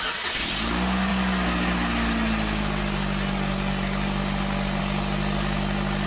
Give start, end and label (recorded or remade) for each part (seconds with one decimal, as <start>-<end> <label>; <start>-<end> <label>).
0.0-6.1 recorded